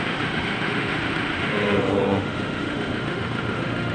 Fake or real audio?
fake